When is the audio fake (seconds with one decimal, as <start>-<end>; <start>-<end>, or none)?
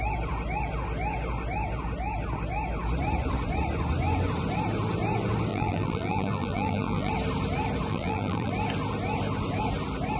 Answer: 5.5-7.1; 7.9-8.5